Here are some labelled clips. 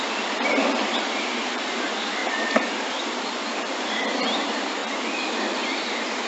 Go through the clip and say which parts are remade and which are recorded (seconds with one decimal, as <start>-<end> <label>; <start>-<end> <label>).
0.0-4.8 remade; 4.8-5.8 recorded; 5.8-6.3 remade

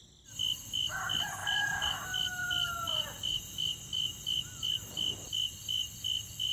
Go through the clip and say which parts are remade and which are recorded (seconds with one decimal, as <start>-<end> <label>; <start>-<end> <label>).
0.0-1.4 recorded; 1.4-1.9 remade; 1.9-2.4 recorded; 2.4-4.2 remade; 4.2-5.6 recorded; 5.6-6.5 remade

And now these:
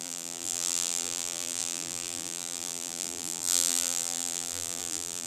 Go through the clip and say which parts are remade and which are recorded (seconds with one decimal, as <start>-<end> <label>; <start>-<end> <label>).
0.0-5.3 remade

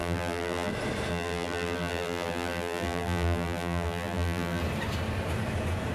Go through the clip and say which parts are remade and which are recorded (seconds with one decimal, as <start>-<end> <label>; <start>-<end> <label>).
0.0-0.7 remade; 0.7-1.1 recorded; 1.1-4.6 remade; 4.6-5.9 recorded

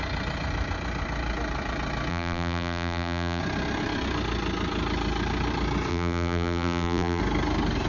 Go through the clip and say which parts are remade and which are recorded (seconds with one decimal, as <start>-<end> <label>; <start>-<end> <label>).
0.0-2.1 recorded; 2.1-3.4 remade; 3.4-5.9 recorded; 5.9-7.2 remade; 7.2-7.9 recorded